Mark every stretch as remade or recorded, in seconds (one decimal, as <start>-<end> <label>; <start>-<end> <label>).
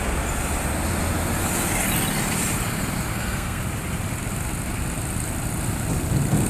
0.0-3.1 recorded; 3.1-3.6 remade; 3.6-6.5 recorded